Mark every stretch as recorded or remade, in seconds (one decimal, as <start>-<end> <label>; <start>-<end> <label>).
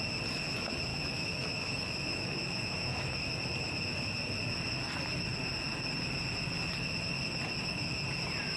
0.0-0.9 recorded; 0.9-3.3 remade; 3.3-8.6 recorded